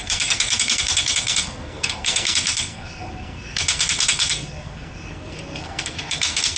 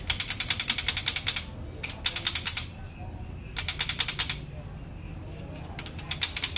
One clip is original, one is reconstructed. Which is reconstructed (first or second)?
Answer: first